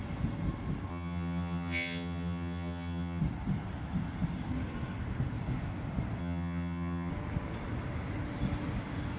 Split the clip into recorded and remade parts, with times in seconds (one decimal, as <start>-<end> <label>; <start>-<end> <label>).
0.0-0.9 recorded; 0.9-3.2 remade; 3.2-6.2 recorded; 6.2-7.1 remade; 7.1-9.2 recorded